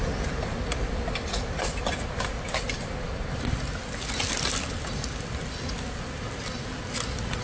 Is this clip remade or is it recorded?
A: recorded